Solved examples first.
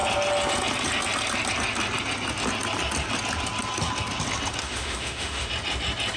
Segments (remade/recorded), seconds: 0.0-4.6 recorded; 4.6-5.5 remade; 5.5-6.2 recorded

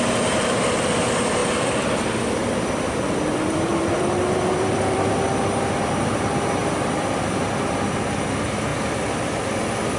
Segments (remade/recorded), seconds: 0.0-1.4 recorded; 1.4-5.1 remade; 5.1-6.6 recorded; 6.6-7.4 remade; 7.4-10.0 recorded

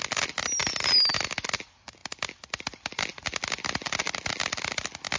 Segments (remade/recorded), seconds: 0.0-5.2 recorded

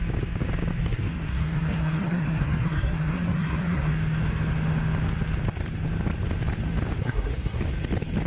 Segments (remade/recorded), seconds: 0.0-0.8 recorded; 0.8-3.9 remade; 3.9-7.0 recorded; 7.0-7.6 remade; 7.6-8.3 recorded

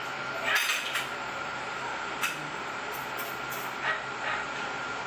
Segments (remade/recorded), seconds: 0.0-0.7 recorded; 0.7-2.9 remade; 2.9-5.1 recorded

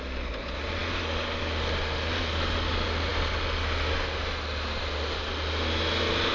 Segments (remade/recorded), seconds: 0.0-6.3 recorded

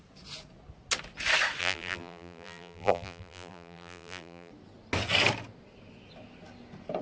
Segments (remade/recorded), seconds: 0.0-1.6 recorded; 1.6-4.5 remade; 4.5-7.0 recorded

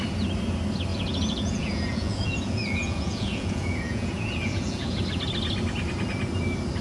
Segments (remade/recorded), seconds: 0.0-0.9 recorded; 0.9-5.0 remade; 5.0-6.8 recorded